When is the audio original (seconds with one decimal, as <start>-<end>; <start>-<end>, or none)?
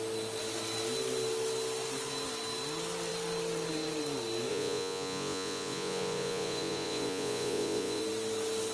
0.0-4.5; 8.0-8.7